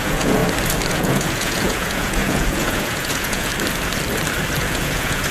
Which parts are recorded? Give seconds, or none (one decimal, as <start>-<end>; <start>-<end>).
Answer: 0.4-0.9; 3.5-4.6